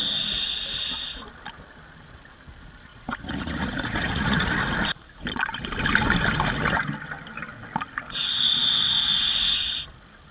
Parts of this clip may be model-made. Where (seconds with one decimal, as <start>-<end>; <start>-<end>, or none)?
2.9-4.5